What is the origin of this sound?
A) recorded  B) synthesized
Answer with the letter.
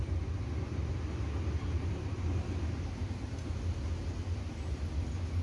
A